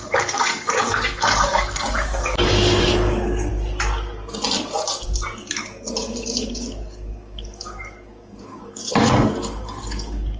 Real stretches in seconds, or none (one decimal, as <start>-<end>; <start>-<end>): 3.5-5.5